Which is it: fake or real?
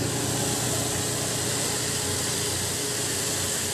real